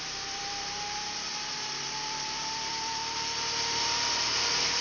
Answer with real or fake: fake